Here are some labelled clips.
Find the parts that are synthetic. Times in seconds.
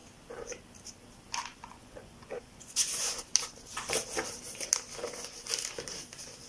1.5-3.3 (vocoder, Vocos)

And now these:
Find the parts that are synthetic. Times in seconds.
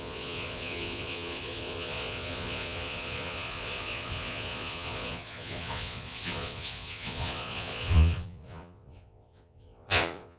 0.0-10.4 (vocoder, Vocos)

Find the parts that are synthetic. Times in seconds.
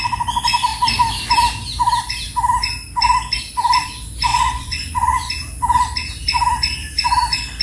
4.3-5.3 (vocoder, Vocos)